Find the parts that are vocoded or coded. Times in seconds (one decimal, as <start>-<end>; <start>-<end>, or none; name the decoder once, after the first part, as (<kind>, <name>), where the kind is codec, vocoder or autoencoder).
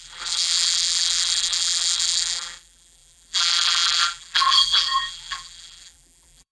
0.0-6.5 (vocoder, BigVGAN v2)